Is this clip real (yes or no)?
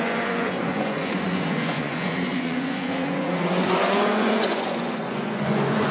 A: no